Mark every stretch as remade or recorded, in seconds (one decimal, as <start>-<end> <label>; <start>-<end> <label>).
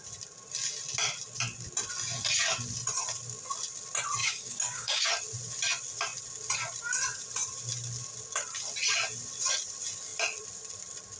0.0-4.2 recorded; 4.2-5.1 remade; 5.1-11.2 recorded